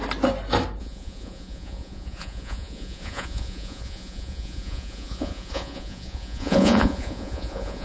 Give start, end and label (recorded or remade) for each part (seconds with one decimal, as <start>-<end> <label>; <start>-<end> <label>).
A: 0.0-0.8 recorded; 0.8-7.8 remade